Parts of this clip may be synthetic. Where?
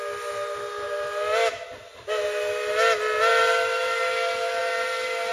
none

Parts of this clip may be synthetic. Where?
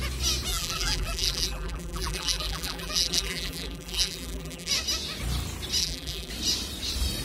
0.5-4.7 (vocoder, BigVGAN v2); 5.8-6.3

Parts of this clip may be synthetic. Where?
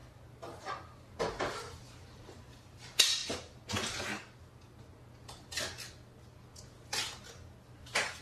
none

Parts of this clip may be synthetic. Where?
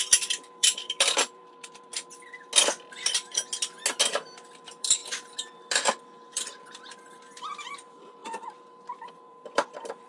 0.0-1.9 (vocoder, BigVGAN v2); 4.6-5.0; 5.7-10.1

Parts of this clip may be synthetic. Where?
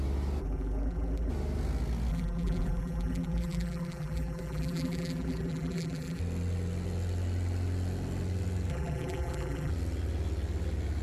0.4-1.3 (vocoder, BigVGAN v2); 2.1-6.2; 8.7-9.7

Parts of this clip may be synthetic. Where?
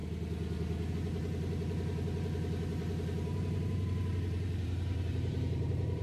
0.9-6.0 (vocoder, BigVGAN v2)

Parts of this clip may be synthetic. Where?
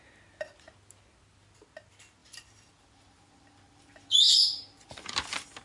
2.2-5.6 (vocoder, BigVGAN v2)